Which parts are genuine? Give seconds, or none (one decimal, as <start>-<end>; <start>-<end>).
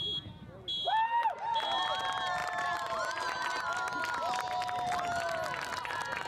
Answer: 0.0-6.3